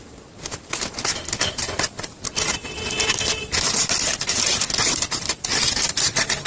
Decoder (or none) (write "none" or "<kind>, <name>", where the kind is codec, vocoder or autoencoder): none